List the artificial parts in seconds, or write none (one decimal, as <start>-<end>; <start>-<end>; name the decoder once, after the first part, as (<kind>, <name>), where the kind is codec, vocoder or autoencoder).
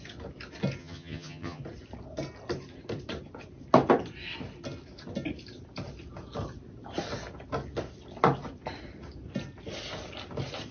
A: 0.8-1.6 (vocoder, HiFi-GAN)